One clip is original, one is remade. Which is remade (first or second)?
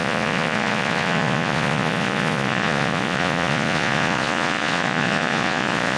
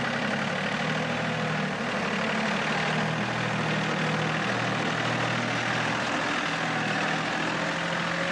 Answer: first